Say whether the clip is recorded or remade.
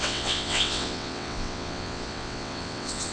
remade